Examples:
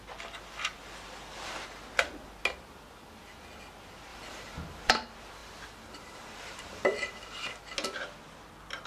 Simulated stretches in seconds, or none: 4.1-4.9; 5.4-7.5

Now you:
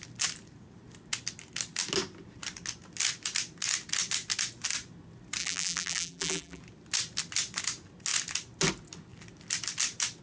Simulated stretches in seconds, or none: 5.4-6.6

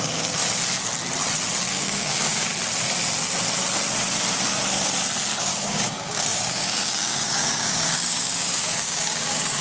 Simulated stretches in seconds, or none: 0.0-0.4; 1.7-2.5; 5.4-9.6

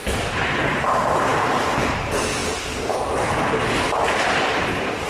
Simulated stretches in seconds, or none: none